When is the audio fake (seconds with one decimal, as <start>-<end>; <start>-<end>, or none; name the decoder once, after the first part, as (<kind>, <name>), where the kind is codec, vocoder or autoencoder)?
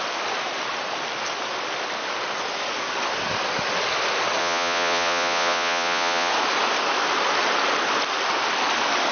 4.4-6.3 (vocoder, Vocos)